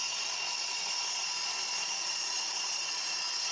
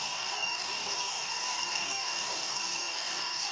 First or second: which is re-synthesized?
second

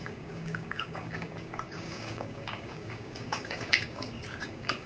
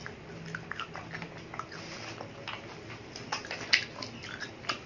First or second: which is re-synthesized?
first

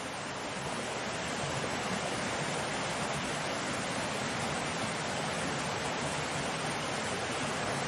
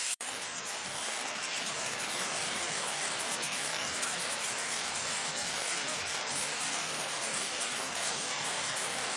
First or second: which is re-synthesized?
second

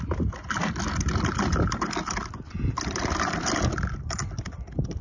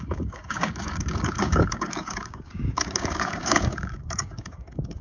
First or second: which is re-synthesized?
second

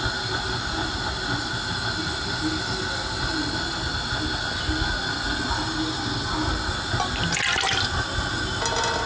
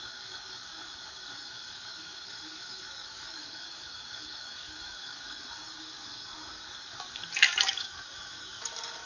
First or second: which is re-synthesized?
second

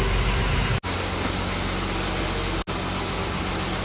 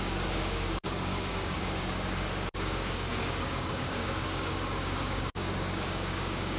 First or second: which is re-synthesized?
second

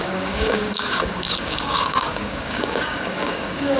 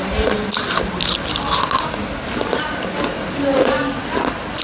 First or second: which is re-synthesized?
first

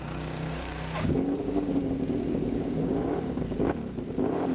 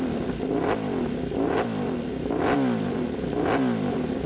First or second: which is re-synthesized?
first